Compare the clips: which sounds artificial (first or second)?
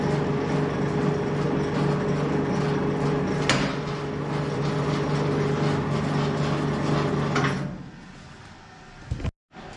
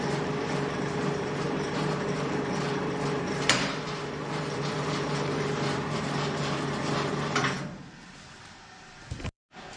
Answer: second